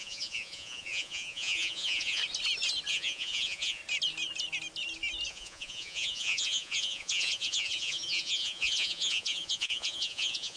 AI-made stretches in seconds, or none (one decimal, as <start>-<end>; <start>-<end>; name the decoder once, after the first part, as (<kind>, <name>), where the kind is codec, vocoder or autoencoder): 0.0-2.2 (vocoder, Vocos); 2.9-3.8; 5.3-10.6